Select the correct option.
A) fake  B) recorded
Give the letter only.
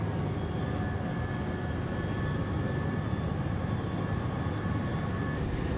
B